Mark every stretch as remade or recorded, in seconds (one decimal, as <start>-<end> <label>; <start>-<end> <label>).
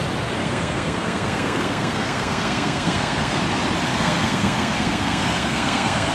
0.0-0.4 recorded; 0.4-3.4 remade; 3.4-3.9 recorded; 3.9-6.1 remade